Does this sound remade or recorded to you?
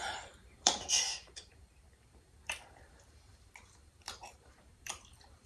remade